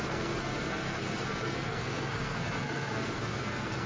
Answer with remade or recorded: remade